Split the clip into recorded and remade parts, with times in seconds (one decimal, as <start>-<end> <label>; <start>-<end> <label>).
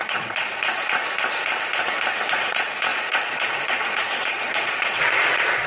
0.0-1.0 remade; 1.0-2.3 recorded; 2.3-5.7 remade